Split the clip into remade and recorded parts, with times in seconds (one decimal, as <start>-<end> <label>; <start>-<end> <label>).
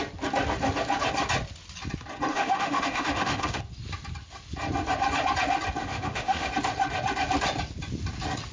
0.0-2.3 recorded; 2.3-3.6 remade; 3.6-5.8 recorded; 5.8-6.5 remade; 6.5-8.5 recorded